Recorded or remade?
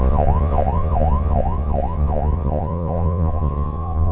remade